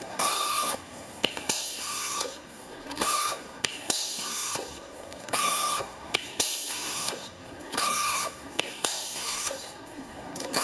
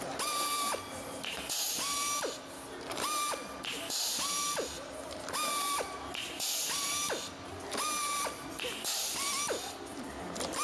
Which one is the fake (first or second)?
first